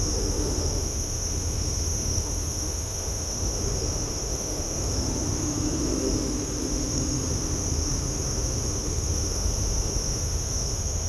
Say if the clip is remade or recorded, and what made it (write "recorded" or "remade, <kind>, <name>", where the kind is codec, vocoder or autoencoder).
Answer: remade, autoencoder, DAC-VAE